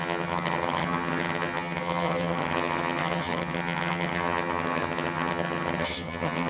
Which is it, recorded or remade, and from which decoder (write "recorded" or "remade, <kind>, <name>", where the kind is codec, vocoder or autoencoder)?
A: remade, vocoder, HiFi-GAN